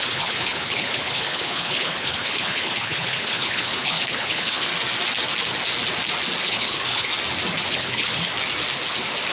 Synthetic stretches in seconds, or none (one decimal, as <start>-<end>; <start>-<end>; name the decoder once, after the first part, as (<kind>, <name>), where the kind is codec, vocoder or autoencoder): 0.0-4.7 (codec, HILCodec); 6.4-7.1; 7.7-8.3